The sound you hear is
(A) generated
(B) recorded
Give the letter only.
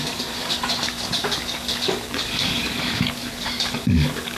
A